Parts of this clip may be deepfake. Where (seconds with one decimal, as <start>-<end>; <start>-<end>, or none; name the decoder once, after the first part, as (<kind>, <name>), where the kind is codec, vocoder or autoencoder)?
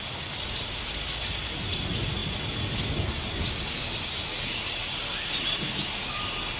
none